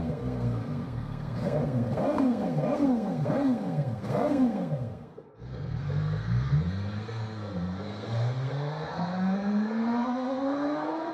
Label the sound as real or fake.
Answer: fake